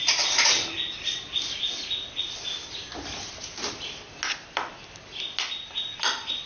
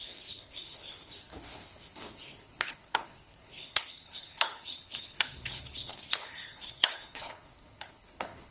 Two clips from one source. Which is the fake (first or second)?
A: second